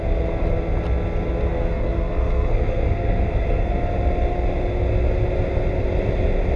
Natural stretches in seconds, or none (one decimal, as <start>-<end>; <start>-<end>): 0.0-1.5; 3.7-6.6